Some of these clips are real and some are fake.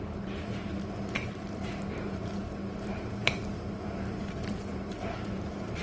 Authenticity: fake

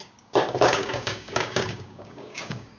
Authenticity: fake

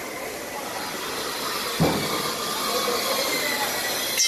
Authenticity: real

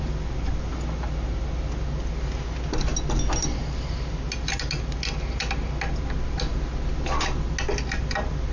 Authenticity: real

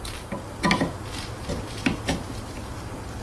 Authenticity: real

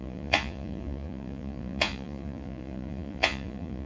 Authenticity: fake